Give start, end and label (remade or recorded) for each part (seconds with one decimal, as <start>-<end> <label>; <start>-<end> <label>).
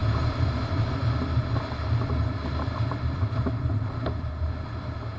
0.0-0.9 remade; 0.9-5.2 recorded